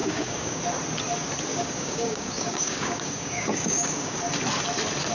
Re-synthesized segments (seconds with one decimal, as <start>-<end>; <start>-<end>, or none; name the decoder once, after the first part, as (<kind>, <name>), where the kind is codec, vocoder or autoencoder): 0.0-0.6 (codec, DAC); 1.5-4.2